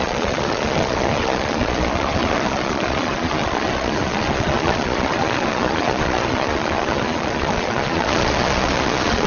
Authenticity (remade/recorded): remade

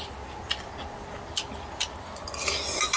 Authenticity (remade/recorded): recorded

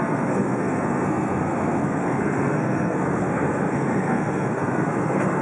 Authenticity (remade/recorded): remade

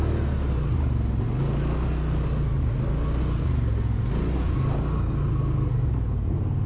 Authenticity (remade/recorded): recorded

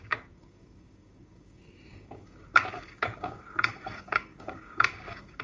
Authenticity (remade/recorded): remade